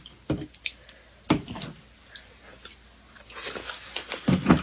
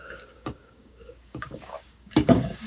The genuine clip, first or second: first